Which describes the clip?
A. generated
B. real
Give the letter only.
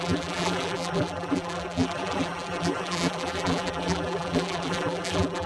A